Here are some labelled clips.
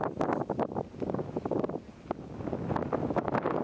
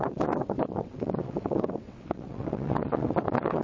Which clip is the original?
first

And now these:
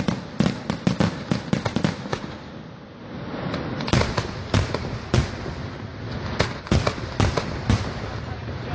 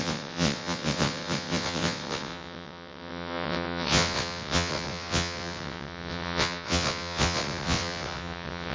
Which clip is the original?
first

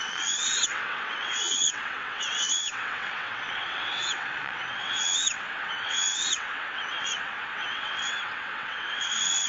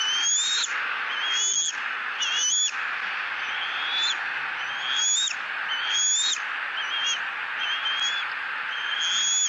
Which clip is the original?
second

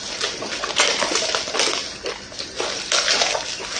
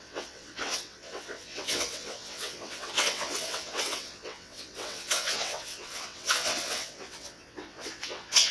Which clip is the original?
first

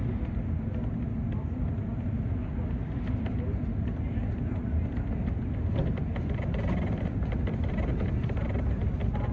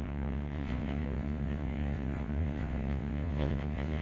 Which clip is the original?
first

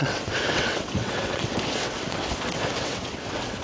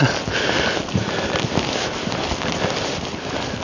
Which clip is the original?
second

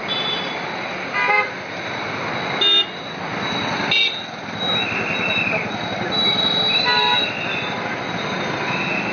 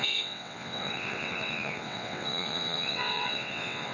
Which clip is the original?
first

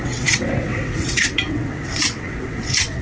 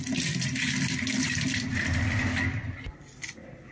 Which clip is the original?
second